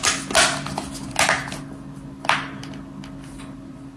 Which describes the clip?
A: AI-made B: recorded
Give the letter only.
B